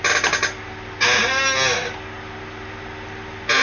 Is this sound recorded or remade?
recorded